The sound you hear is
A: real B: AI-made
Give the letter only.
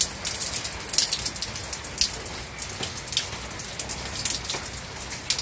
A